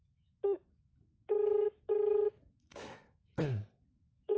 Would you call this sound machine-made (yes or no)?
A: yes